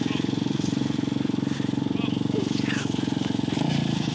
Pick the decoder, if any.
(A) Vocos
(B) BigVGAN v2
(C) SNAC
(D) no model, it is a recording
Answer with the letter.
D